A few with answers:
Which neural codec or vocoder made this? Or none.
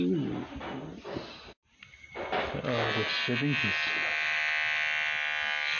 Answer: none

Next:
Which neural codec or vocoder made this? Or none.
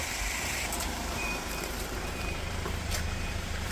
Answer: vocoder, BigVGAN v2